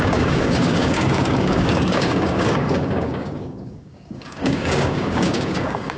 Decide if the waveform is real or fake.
fake